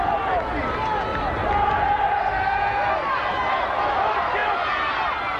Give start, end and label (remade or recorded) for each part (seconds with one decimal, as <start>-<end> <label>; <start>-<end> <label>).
0.0-5.4 recorded